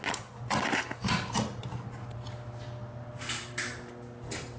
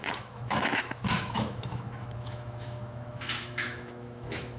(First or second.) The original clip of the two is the first